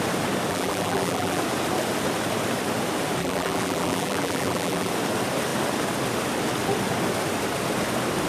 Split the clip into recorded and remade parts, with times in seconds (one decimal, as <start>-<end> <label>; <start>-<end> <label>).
0.0-0.5 recorded; 0.5-1.4 remade; 1.4-3.2 recorded; 3.2-4.9 remade; 4.9-8.3 recorded